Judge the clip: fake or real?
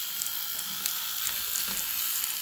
real